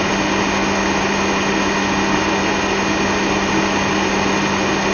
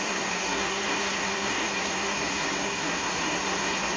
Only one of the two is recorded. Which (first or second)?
first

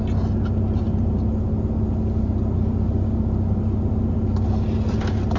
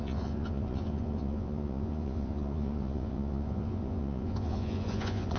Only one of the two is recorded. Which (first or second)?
first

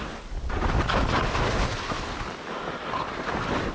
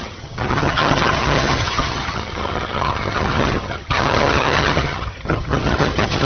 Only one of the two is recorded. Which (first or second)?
first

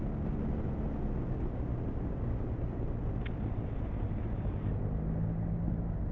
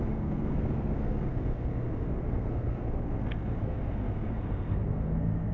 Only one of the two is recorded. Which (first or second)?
first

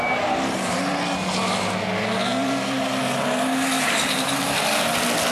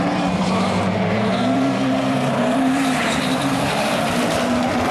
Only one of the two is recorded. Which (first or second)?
first